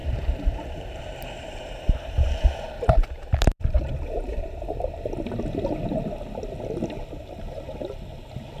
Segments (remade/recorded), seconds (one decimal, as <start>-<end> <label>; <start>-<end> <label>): 0.0-5.0 remade; 5.0-8.6 recorded